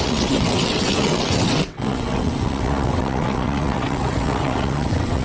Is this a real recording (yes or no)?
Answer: no